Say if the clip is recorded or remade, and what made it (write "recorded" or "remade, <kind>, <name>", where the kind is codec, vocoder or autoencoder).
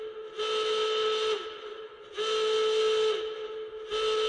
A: recorded